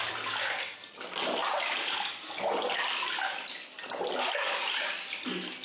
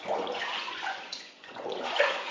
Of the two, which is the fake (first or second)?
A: second